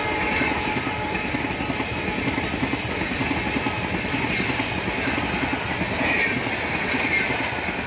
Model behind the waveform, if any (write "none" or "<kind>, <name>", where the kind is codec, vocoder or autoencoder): none